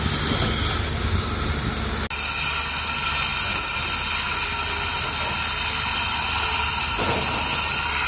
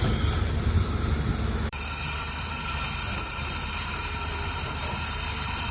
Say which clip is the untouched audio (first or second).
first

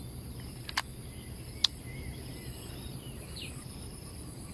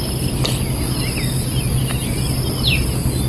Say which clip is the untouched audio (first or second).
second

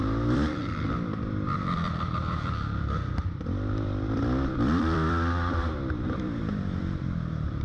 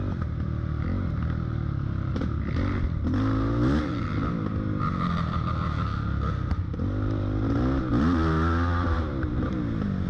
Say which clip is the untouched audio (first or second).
second